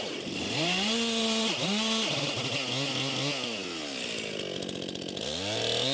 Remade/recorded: recorded